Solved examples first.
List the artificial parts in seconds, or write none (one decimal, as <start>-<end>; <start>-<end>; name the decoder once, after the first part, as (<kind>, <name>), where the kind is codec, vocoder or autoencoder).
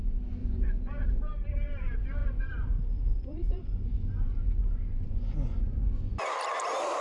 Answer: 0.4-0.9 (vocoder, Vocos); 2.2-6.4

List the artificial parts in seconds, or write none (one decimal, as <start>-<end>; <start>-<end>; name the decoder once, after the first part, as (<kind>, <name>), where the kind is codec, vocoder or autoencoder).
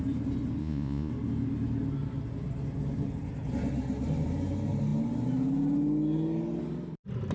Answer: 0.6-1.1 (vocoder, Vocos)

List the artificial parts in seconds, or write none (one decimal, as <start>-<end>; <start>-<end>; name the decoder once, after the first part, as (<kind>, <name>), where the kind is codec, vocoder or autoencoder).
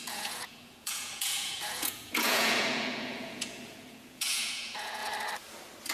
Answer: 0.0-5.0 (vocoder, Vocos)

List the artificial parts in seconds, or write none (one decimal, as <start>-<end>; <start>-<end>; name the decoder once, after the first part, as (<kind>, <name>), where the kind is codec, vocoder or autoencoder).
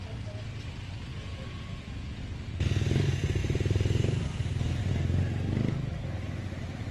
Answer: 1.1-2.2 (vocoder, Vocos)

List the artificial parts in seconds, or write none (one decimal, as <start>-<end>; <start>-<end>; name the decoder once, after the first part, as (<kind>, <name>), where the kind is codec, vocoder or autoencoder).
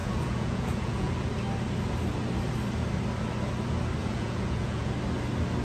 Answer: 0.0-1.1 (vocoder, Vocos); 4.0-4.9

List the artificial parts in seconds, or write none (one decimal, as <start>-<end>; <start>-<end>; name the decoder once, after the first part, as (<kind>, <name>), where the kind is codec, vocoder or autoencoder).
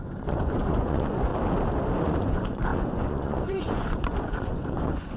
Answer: 0.0-1.3 (vocoder, Vocos); 2.0-5.2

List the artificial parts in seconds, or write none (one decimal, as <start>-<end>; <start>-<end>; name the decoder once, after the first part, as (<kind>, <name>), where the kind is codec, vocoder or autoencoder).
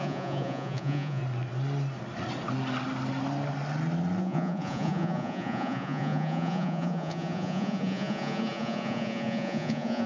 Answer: 0.0-1.2 (vocoder, Vocos); 4.2-10.1